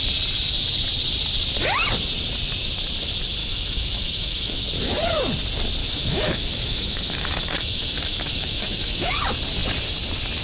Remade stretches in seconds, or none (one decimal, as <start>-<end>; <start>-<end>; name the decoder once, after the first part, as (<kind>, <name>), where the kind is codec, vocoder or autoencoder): 3.4-4.6 (autoencoder, DAC-VAE); 5.8-9.1